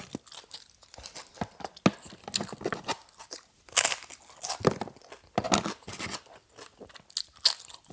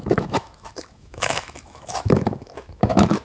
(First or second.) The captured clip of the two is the first